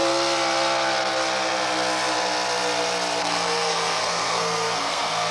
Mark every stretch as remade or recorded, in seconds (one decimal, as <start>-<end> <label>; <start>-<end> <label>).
0.0-3.2 recorded; 3.2-5.3 remade